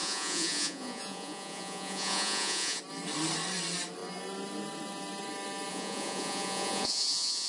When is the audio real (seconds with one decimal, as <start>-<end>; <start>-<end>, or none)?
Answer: 2.8-5.7